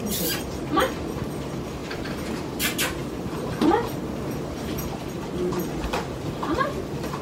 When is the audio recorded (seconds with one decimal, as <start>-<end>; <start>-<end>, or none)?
0.0-1.8; 2.5-3.0; 4.8-7.2